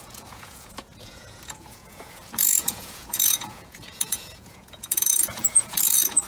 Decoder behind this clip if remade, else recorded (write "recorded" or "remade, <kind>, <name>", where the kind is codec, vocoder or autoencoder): remade, vocoder, Vocos